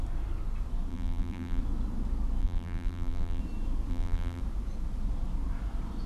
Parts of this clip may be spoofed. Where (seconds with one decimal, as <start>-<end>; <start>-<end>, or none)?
0.9-1.6; 2.4-3.4; 3.9-4.4